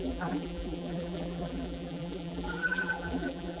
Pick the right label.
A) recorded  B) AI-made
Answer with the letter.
B